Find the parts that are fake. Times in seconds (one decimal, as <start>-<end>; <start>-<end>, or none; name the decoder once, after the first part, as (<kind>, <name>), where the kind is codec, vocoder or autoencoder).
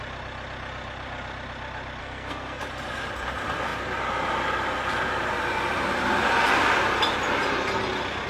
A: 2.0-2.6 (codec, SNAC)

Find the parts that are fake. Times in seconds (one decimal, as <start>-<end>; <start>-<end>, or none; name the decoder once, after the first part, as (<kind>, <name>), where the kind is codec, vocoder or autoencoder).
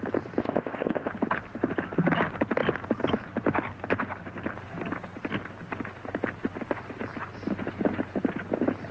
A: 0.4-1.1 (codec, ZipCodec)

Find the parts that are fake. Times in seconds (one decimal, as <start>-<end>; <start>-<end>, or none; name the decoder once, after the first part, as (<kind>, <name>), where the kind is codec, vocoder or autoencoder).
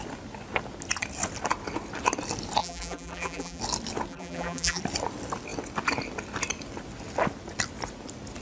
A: 2.6-3.6 (vocoder, BigVGAN v2); 4.1-4.8